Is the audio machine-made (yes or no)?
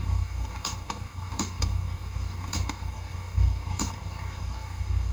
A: yes